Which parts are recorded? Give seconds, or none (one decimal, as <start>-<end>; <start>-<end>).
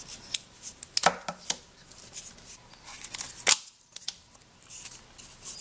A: 0.0-5.6